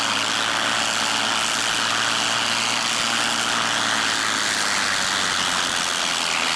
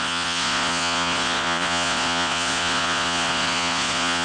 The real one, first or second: first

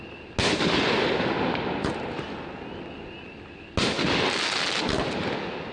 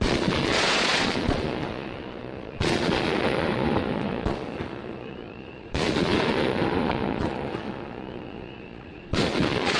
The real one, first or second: first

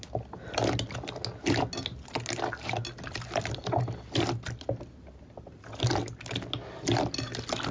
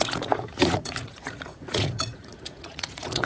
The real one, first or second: first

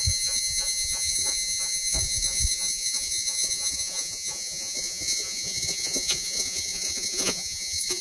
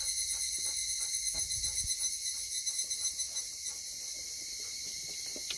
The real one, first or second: second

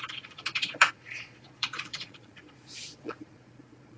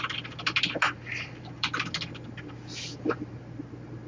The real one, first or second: second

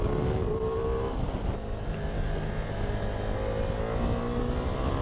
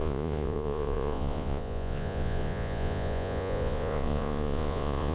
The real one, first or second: first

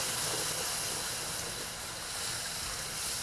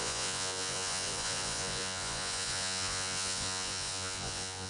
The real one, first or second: first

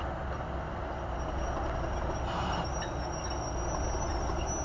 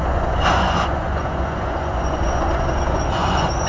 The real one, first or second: first